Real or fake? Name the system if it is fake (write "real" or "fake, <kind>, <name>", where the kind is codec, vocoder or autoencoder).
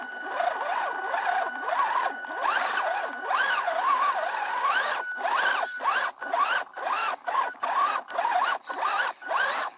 real